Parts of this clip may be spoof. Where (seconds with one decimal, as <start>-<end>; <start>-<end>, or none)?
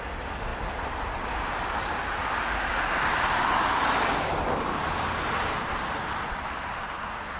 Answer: none